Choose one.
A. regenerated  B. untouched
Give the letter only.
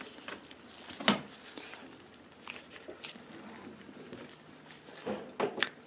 B